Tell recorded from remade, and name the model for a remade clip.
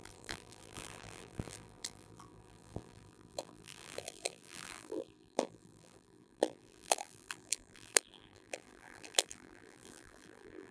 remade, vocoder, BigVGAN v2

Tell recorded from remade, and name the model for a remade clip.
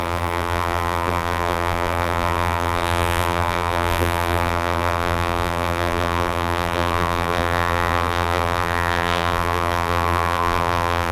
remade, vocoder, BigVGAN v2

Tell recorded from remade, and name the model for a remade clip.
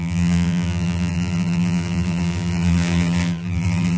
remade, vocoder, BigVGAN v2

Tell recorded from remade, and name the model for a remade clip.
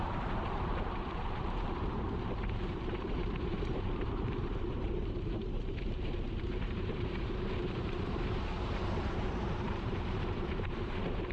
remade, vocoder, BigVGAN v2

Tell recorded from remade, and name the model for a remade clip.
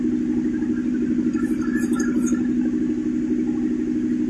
recorded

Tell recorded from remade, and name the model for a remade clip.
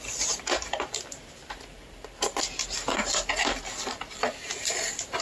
remade, vocoder, BigVGAN v2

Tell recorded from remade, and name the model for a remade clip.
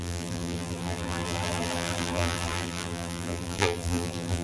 remade, vocoder, BigVGAN v2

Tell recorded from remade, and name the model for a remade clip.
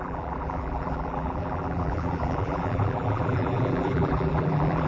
remade, vocoder, BigVGAN v2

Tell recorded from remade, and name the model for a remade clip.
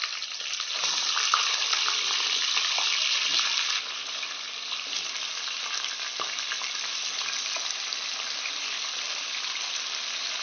recorded